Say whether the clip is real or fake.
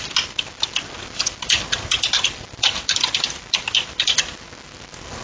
real